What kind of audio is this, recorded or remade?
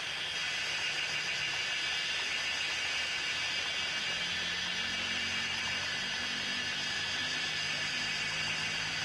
recorded